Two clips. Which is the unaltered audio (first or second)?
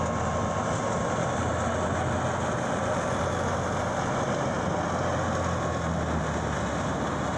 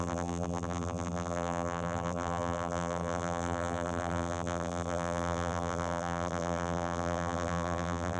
first